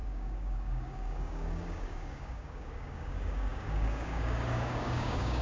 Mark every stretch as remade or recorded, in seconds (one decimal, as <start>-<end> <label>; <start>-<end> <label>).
0.0-5.4 remade